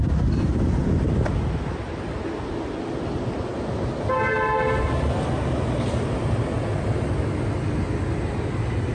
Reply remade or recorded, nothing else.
recorded